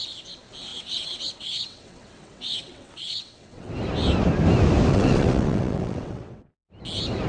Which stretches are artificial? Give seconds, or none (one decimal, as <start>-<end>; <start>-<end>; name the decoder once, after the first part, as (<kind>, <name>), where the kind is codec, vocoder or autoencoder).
0.7-3.7 (vocoder, WaveNeXt); 4.9-6.5